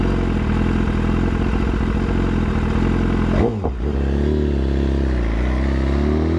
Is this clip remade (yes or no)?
no